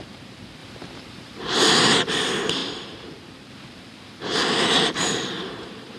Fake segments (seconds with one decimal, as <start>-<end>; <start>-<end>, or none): 0.0-4.4; 5.0-6.0